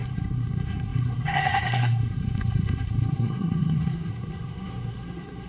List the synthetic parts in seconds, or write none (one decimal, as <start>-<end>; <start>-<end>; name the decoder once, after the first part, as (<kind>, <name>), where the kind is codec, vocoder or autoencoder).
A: 0.0-5.5 (codec, SNAC)